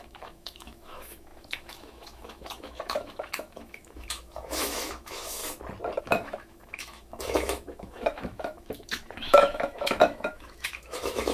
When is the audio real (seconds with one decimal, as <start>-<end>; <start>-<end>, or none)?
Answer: 5.4-6.0